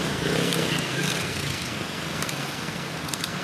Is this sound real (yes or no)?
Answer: no